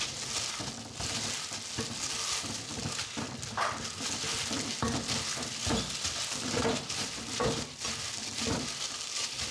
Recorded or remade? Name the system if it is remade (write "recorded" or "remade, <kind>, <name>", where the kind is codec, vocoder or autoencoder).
recorded